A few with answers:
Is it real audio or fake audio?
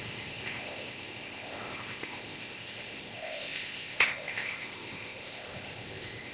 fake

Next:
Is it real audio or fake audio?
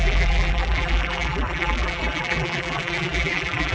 fake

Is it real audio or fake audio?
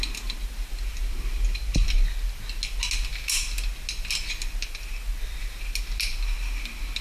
real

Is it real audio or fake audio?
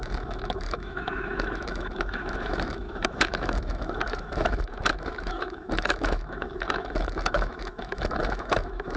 fake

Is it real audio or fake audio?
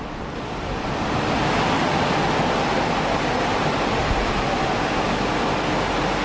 real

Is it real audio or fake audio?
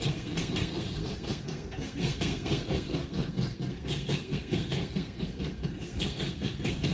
fake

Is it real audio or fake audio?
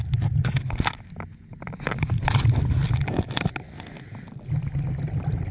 real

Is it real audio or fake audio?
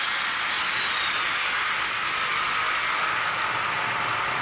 real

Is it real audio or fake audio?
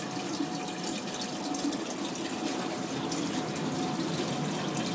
real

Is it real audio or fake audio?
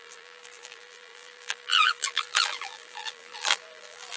fake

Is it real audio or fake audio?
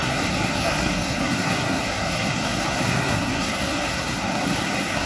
fake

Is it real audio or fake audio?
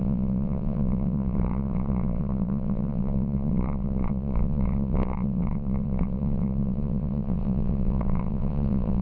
fake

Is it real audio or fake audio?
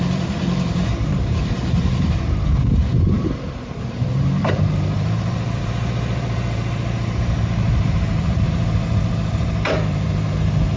fake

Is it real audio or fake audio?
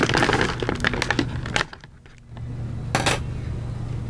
real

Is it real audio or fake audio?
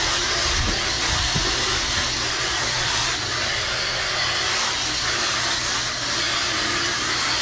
real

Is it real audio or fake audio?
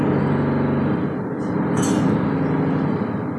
real